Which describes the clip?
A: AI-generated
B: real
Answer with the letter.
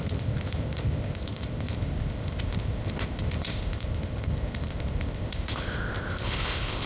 A